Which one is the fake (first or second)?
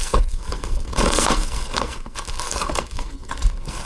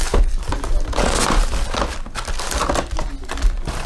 first